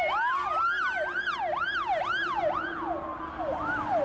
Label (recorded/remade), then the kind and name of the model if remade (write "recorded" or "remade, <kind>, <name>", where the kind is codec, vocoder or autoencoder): recorded